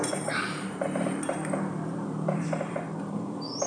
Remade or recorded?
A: remade